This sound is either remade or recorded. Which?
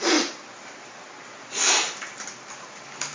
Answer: recorded